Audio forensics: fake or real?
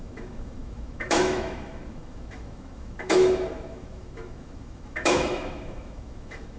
fake